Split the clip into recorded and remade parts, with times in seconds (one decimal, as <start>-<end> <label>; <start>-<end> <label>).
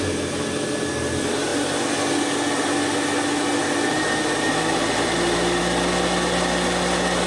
0.0-7.3 recorded